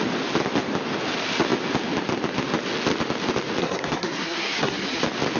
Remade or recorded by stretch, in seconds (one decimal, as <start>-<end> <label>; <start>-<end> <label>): 0.0-3.6 recorded; 3.6-5.0 remade; 5.0-5.4 recorded

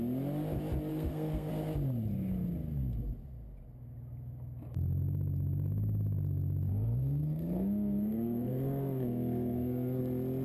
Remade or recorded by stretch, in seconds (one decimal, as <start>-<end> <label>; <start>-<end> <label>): 0.0-0.9 recorded; 0.9-1.5 remade; 1.5-6.7 recorded; 6.7-10.0 remade; 10.0-10.4 recorded

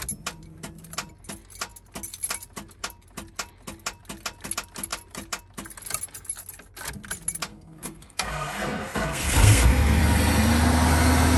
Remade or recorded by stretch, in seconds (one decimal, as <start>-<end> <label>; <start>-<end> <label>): 0.0-7.5 recorded; 7.5-10.0 remade; 10.0-11.4 recorded

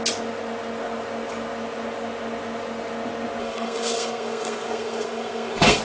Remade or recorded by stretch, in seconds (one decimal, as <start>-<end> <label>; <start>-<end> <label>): 0.0-3.4 recorded; 3.4-5.8 remade